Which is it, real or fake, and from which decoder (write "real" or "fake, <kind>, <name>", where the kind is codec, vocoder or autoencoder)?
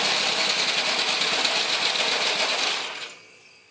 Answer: real